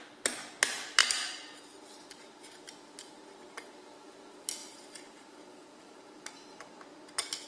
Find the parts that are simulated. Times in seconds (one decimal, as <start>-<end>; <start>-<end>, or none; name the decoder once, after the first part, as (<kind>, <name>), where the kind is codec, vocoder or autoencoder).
4.6-6.8 (vocoder, BigVGAN v2)